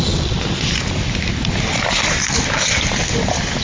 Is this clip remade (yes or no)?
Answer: no